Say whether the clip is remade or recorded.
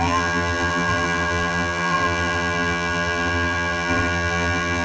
remade